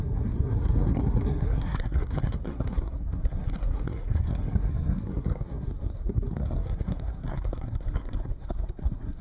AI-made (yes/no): yes